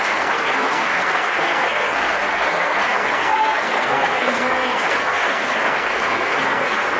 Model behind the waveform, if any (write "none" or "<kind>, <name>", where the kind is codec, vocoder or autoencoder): codec, SNAC